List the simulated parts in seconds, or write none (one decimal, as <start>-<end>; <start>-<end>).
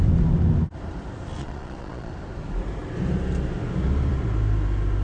1.4-2.1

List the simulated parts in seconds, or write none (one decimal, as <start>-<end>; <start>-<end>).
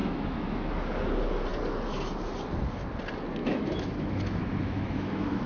0.0-0.7; 3.4-5.5